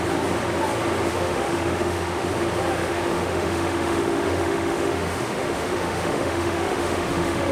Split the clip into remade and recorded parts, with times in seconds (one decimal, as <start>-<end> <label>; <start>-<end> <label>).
0.0-1.1 recorded; 1.1-2.3 remade; 2.3-2.8 recorded; 2.8-7.5 remade